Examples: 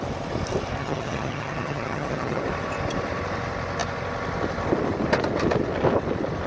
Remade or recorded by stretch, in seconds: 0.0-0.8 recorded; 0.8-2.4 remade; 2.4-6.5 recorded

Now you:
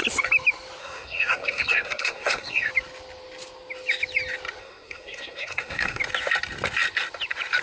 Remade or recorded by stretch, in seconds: 0.0-0.8 recorded; 0.8-2.7 remade; 2.7-4.6 recorded; 4.6-6.0 remade; 6.0-7.6 recorded